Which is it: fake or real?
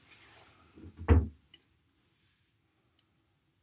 real